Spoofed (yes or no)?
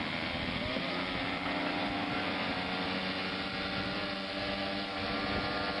no